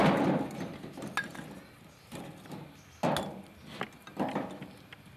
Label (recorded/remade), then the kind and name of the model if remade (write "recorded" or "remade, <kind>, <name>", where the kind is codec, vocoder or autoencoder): recorded